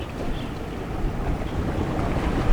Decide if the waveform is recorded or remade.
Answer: recorded